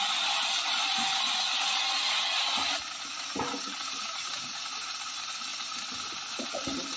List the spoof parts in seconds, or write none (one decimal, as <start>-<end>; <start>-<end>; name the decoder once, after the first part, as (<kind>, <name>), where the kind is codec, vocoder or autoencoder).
none